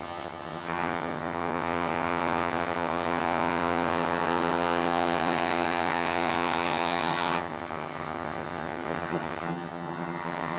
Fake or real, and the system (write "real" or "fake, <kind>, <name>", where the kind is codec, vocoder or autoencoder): fake, vocoder, HiFi-GAN